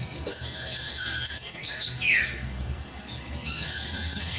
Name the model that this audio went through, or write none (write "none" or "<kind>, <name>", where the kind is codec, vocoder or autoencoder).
codec, SNAC